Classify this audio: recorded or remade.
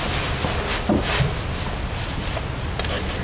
recorded